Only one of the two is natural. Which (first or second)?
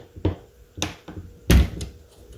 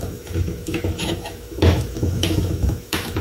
first